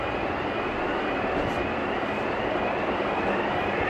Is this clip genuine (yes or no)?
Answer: yes